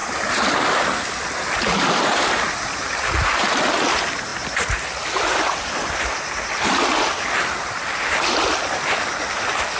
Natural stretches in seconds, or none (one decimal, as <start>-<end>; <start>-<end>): 0.0-9.8